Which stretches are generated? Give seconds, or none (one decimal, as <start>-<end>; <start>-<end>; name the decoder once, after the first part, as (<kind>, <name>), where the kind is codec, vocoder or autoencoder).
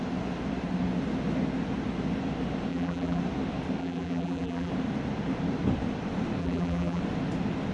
2.7-3.2 (vocoder, BigVGAN v2); 3.8-4.7; 6.4-7.0